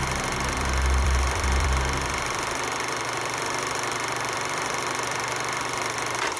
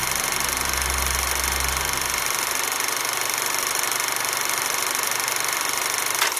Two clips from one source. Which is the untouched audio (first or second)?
second